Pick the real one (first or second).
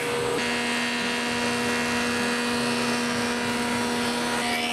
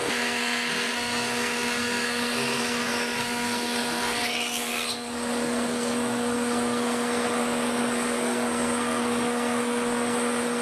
first